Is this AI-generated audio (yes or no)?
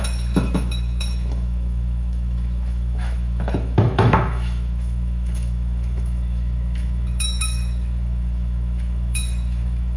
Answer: yes